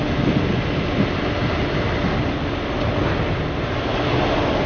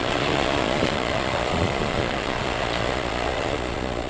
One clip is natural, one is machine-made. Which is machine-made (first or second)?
second